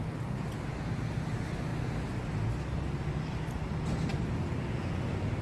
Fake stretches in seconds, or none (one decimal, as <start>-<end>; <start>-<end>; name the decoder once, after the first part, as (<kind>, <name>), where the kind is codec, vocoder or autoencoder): none